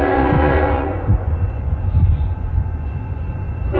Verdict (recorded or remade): remade